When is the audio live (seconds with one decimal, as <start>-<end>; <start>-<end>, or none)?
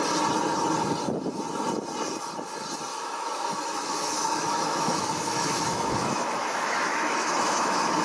0.0-2.9